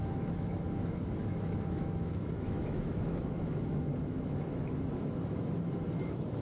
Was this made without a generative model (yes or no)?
no